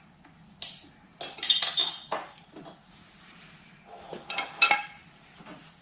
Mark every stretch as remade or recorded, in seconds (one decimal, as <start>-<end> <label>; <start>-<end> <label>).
0.0-5.8 recorded